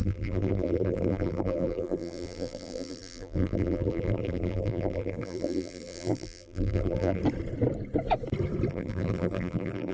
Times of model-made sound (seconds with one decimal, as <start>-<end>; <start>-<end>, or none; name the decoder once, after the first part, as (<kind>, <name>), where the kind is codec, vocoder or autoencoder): 0.0-7.2 (vocoder, BigVGAN v2); 8.7-9.9